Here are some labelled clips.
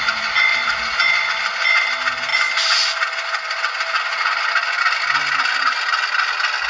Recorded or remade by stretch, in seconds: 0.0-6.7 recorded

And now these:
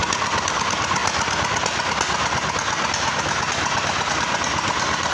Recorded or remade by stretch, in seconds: 0.0-0.6 remade; 0.6-5.1 recorded

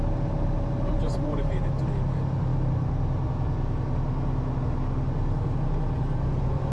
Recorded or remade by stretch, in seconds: 0.0-0.9 recorded; 0.9-1.6 remade; 1.6-6.7 recorded

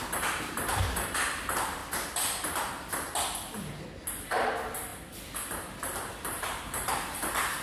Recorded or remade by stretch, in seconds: 0.0-1.8 remade; 1.8-4.1 recorded; 4.1-4.9 remade; 4.9-5.7 recorded; 5.7-7.6 remade

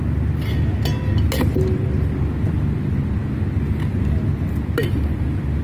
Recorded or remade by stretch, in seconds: 0.0-5.6 recorded

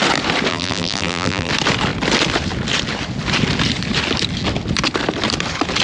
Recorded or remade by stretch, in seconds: 0.0-0.5 recorded; 0.5-1.5 remade; 1.5-5.8 recorded

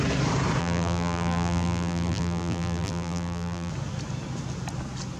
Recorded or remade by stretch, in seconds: 0.0-0.6 recorded; 0.6-3.7 remade; 3.7-5.2 recorded